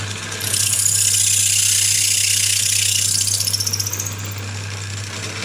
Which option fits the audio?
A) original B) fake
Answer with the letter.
A